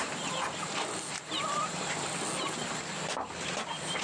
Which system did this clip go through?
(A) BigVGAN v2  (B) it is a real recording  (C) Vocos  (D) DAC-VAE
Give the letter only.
B